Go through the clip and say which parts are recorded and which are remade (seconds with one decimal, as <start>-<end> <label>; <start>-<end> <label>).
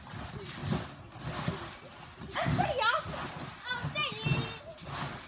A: 0.0-5.3 recorded